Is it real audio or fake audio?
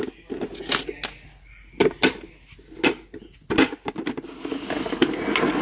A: real